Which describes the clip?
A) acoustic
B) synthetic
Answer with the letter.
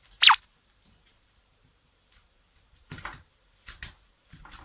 B